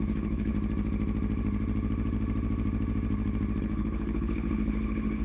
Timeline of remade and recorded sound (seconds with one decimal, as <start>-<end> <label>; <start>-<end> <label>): 0.0-0.5 remade; 0.5-3.6 recorded; 3.6-5.2 remade